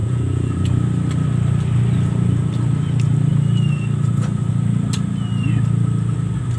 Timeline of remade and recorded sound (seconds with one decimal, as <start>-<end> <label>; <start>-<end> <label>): 0.0-0.7 remade; 0.7-6.6 recorded